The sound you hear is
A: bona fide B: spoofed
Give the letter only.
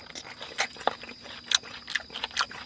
A